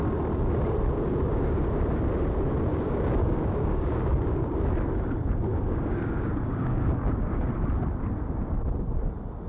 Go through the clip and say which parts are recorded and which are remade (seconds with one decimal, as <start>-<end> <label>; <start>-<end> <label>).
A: 0.0-1.1 recorded; 1.1-1.6 remade; 1.6-2.7 recorded; 2.7-4.5 remade; 4.5-5.5 recorded; 5.5-7.5 remade; 7.5-9.5 recorded